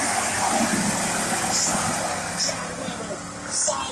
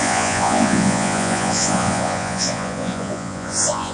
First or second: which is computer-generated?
second